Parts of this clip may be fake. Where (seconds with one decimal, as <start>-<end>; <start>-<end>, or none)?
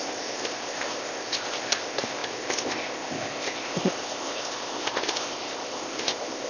0.0-6.5